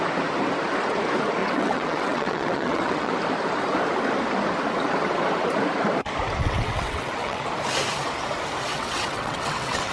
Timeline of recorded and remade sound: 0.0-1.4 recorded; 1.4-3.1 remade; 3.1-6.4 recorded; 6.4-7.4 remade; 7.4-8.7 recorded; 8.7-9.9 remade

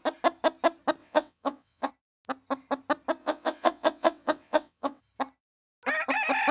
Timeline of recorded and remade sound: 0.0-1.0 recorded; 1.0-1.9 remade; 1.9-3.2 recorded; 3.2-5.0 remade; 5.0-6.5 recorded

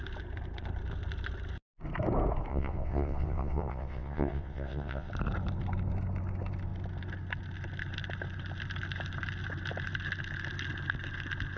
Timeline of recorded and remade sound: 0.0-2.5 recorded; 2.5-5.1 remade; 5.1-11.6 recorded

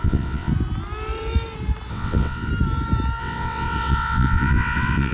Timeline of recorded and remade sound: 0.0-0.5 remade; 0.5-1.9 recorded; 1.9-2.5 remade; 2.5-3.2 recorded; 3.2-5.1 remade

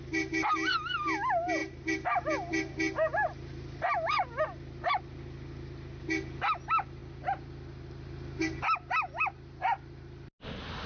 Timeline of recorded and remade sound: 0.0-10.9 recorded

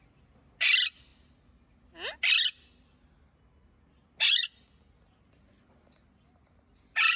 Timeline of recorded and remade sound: 0.0-7.2 recorded